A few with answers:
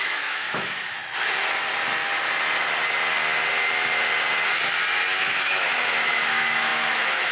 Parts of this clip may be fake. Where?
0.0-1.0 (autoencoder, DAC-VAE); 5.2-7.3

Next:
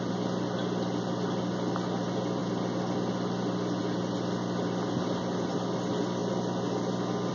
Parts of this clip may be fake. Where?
none